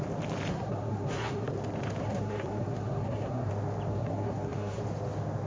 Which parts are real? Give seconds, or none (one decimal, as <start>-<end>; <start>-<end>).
0.0-0.5; 1.5-2.0; 3.5-3.9; 4.8-5.5